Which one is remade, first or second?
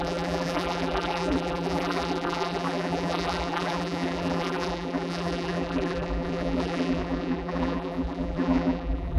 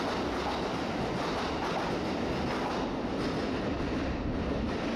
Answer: first